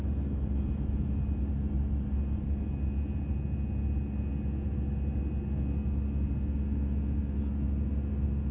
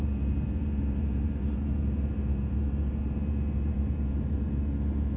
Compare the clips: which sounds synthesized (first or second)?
second